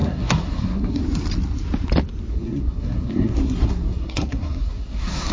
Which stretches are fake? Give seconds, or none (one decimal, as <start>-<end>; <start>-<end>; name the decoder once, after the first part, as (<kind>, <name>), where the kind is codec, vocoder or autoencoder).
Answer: 0.0-1.0 (codec, SNAC); 2.3-5.3